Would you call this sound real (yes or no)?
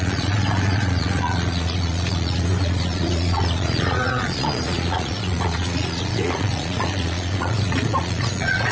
no